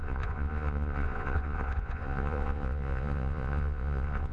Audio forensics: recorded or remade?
remade